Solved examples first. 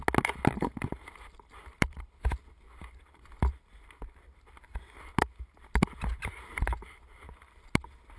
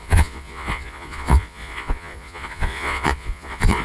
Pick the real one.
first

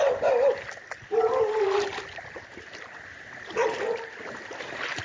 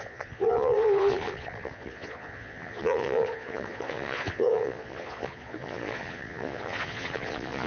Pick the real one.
first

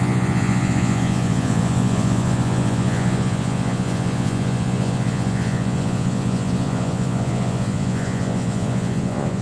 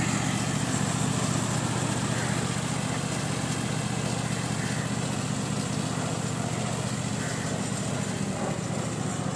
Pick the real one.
second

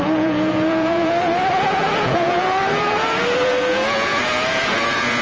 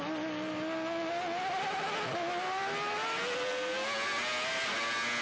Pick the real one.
second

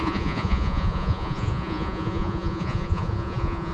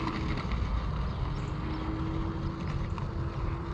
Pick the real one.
second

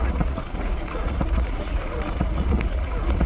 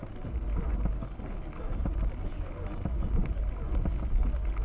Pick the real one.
second